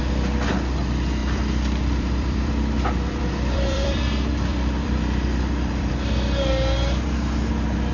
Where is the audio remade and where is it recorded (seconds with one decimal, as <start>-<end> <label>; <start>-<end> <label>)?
0.0-1.2 recorded; 1.2-5.9 remade; 5.9-7.9 recorded